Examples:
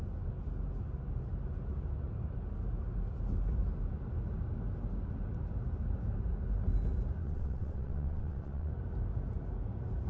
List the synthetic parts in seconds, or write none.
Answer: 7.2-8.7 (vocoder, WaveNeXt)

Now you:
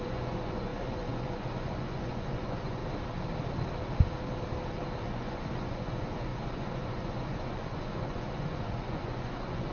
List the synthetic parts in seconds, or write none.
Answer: 0.0-2.8 (vocoder, Vocos); 5.1-9.7

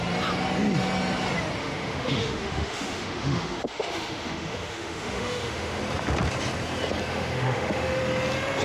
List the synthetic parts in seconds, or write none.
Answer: 1.6-5.8 (autoencoder, DAC-VAE); 7.1-8.0

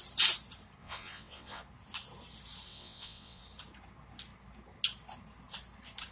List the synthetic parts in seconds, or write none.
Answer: 0.8-1.6 (vocoder, WaveNeXt); 2.7-3.4

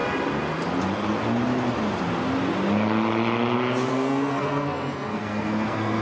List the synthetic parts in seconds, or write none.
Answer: 3.9-6.0 (codec, SNAC)

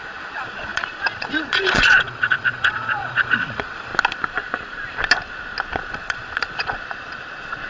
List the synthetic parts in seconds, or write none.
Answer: 0.0-3.9 (vocoder, Vocos); 5.9-7.7